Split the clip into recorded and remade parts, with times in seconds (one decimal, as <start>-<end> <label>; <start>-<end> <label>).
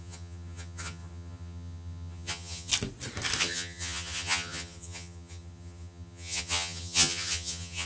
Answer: 0.0-2.7 remade; 2.7-3.4 recorded; 3.4-7.9 remade